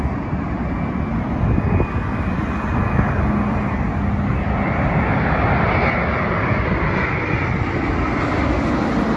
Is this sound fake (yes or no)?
no